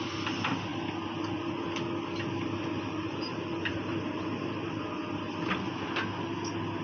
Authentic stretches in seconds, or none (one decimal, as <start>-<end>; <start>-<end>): 0.0-6.8